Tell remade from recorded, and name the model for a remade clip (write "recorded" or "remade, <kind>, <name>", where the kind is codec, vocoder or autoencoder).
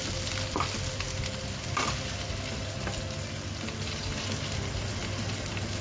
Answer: recorded